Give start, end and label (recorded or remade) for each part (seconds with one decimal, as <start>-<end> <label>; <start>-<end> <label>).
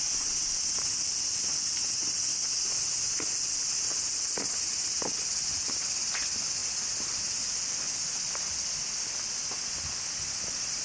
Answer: 0.0-10.8 recorded